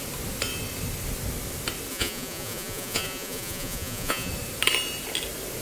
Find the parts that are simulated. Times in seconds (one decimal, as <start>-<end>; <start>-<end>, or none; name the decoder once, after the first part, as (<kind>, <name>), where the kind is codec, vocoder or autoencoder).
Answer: 1.9-4.3 (vocoder, Vocos)